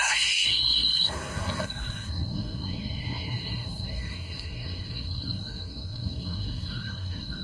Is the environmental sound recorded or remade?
remade